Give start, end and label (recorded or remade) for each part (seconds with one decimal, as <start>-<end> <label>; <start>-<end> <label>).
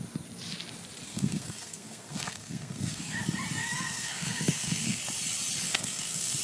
0.0-1.1 recorded; 1.1-3.2 remade; 3.2-3.6 recorded; 3.6-5.0 remade; 5.0-5.7 recorded; 5.7-6.4 remade